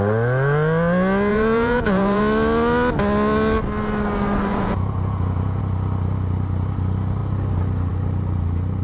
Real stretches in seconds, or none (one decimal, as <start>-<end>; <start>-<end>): 0.0-1.3; 2.2-4.5; 5.6-8.8